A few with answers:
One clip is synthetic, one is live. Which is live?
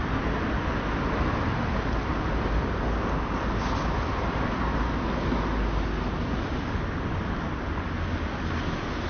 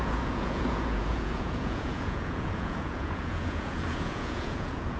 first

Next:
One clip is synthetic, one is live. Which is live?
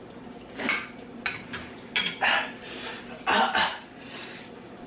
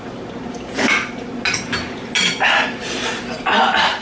second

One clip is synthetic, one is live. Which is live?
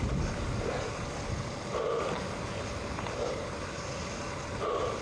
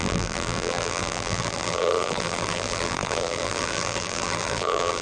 first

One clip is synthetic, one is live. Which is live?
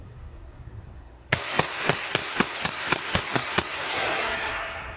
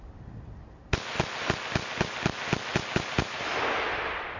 second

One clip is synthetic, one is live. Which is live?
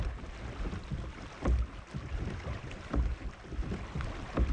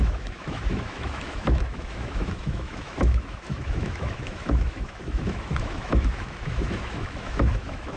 first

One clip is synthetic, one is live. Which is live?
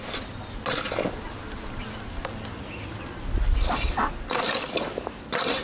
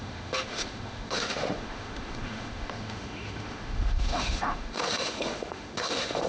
first